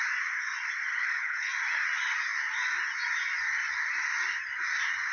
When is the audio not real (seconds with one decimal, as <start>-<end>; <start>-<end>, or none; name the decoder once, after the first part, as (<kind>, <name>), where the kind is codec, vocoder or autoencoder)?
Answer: 0.9-1.5 (codec, HILCodec)